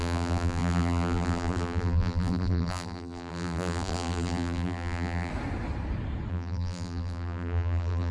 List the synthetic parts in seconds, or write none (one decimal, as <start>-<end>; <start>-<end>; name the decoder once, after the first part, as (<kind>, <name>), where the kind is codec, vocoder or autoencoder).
0.0-5.3 (vocoder, BigVGAN v2); 6.3-8.1